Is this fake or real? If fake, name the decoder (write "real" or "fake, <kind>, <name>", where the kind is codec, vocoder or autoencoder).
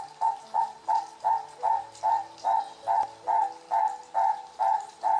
real